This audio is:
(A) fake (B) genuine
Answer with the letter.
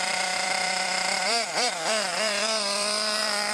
A